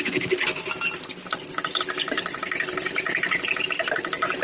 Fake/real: real